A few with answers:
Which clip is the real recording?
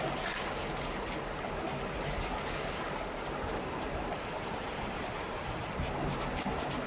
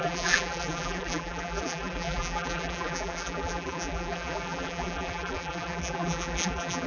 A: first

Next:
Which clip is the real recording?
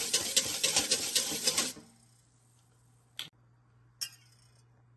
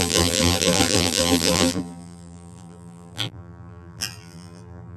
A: first